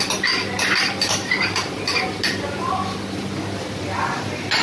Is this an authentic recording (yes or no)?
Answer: yes